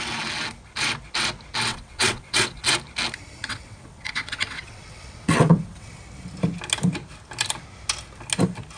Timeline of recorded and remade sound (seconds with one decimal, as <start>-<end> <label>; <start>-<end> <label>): 0.0-1.7 recorded; 1.7-2.7 remade; 2.7-3.4 recorded; 3.4-5.9 remade; 5.9-8.8 recorded